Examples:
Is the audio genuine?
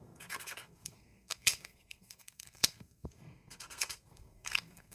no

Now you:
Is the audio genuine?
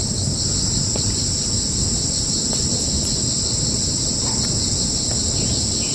yes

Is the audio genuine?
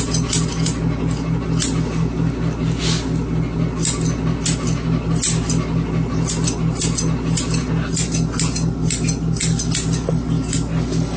yes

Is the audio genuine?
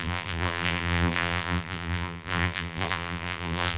no